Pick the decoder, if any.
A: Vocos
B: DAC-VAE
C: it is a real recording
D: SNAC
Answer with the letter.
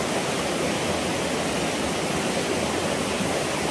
C